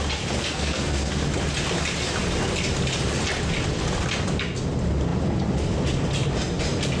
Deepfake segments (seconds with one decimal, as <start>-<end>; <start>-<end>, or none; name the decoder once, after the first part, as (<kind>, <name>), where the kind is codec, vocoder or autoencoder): 0.4-1.1 (codec, SNAC)